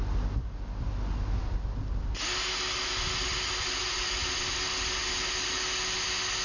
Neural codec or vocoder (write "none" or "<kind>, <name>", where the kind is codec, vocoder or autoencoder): none